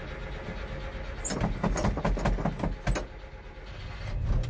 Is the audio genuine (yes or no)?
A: yes